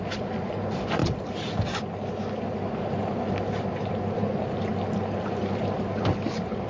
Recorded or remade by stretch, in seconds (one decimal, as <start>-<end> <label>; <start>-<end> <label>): 0.0-1.0 remade; 1.0-3.7 recorded; 3.7-4.7 remade; 4.7-5.4 recorded; 5.4-6.7 remade